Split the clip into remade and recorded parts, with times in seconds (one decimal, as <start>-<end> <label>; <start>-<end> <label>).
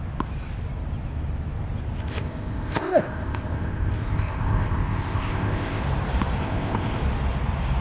0.0-2.0 recorded; 2.0-5.8 remade; 5.8-6.4 recorded; 6.4-7.0 remade; 7.0-7.8 recorded